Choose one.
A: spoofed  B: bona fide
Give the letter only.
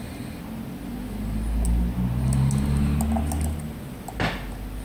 B